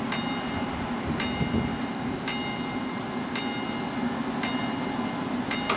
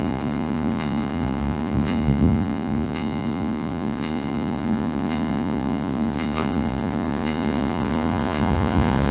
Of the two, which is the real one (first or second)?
first